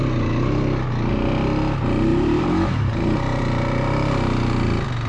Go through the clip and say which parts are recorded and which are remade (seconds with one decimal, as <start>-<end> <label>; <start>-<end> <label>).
0.0-2.1 recorded; 2.1-3.4 remade; 3.4-5.1 recorded